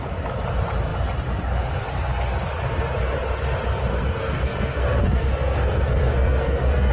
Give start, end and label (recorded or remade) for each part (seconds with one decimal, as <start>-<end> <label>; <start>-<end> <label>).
0.0-3.9 recorded; 3.9-6.9 remade